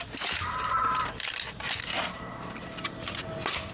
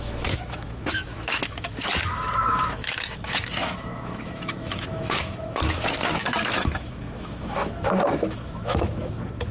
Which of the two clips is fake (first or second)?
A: second